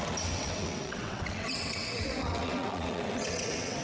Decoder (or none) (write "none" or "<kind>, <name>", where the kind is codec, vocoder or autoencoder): vocoder, WaveNeXt